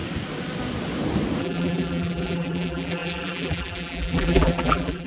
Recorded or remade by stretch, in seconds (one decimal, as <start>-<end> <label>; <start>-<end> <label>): 0.0-1.4 recorded; 1.4-5.1 remade